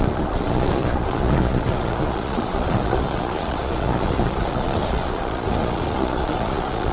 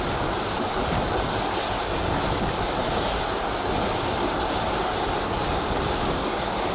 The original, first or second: second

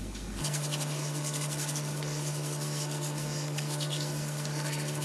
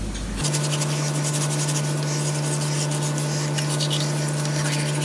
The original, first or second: second